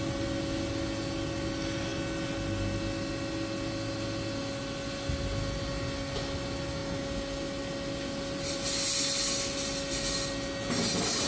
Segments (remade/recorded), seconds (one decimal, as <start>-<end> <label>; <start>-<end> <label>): 0.0-11.3 recorded

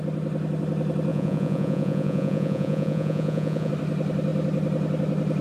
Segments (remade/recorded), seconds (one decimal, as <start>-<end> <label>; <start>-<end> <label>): 0.0-1.1 recorded; 1.1-3.7 remade; 3.7-5.4 recorded

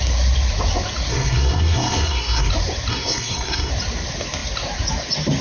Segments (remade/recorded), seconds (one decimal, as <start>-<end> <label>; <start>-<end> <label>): 0.0-1.1 recorded; 1.1-2.5 remade; 2.5-2.9 recorded; 2.9-3.7 remade; 3.7-5.4 recorded